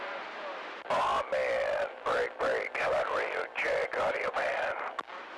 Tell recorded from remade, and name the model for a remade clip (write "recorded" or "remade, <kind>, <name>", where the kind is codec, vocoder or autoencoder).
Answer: recorded